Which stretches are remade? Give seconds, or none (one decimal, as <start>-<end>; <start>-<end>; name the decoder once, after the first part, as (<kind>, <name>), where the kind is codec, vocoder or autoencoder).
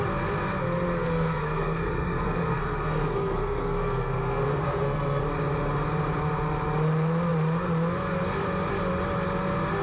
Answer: 1.0-5.2 (codec, SNAC)